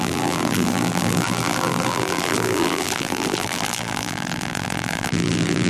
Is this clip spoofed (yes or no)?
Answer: yes